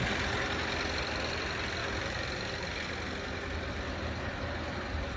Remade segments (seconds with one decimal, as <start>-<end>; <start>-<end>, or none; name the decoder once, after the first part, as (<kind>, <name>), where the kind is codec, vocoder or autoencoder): none